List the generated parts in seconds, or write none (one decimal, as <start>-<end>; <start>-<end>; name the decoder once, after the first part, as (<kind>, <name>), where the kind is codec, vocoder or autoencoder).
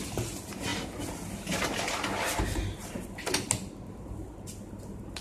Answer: none